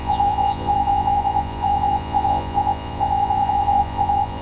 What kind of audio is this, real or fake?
fake